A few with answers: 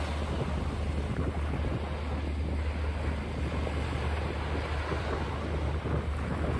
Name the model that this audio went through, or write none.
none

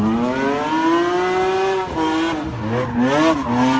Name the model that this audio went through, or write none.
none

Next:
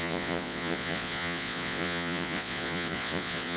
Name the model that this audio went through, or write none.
vocoder, Vocos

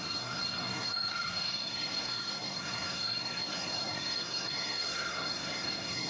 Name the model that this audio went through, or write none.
codec, SNAC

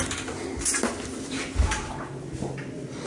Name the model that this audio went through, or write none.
none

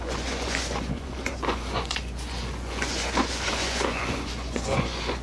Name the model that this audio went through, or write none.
vocoder, Vocos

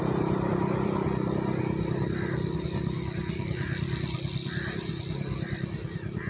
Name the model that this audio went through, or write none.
vocoder, BigVGAN v2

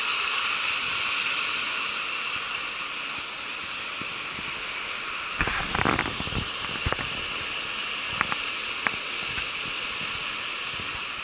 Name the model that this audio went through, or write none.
none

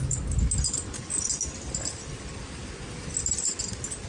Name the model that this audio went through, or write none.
none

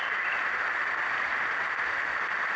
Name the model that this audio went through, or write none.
none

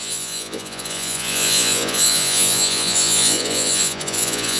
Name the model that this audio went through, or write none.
vocoder, Vocos